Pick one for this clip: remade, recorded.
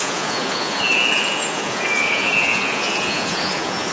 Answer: remade